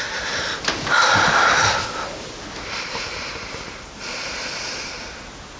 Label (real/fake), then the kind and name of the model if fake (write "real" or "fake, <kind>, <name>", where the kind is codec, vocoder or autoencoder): real